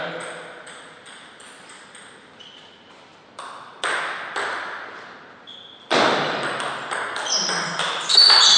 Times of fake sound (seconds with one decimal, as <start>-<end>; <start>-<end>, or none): none